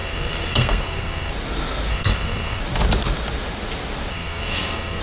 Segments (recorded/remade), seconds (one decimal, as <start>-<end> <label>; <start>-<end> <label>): 0.0-1.3 remade; 1.3-1.9 recorded; 1.9-2.6 remade; 2.6-4.1 recorded; 4.1-5.0 remade